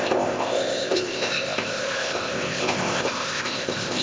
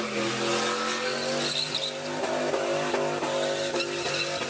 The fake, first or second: first